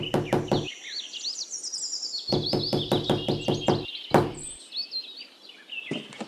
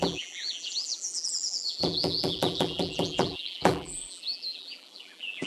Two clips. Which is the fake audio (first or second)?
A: second